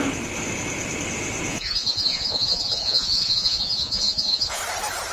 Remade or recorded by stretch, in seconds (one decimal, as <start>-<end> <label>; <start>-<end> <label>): 0.0-1.5 recorded; 1.5-4.6 remade; 4.6-5.1 recorded